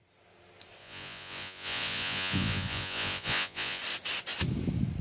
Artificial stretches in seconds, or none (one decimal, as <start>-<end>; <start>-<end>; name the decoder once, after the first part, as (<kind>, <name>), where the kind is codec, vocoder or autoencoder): 0.8-3.8 (vocoder, Vocos)